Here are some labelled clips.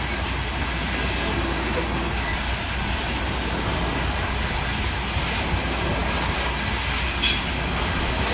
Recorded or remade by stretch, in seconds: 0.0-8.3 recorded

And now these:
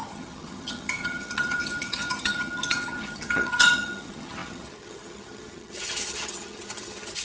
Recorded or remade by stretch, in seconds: 0.0-7.2 remade

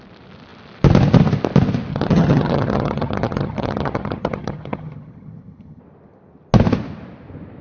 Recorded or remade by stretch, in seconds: 0.0-1.9 recorded; 1.9-5.8 remade; 5.8-7.6 recorded